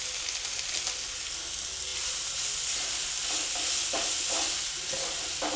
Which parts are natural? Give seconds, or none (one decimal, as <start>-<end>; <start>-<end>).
0.0-5.6